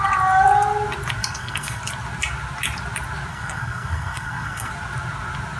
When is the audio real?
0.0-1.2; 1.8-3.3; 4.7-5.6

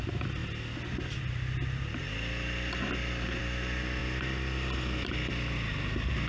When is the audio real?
0.0-6.3

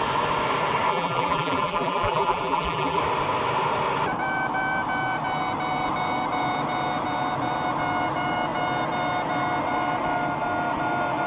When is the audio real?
0.0-0.9; 3.0-11.3

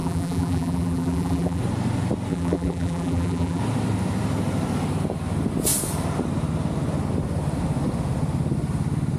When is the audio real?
1.6-2.3; 3.6-9.2

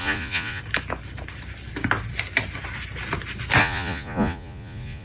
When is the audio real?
0.6-3.6